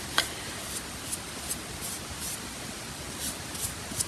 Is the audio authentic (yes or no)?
yes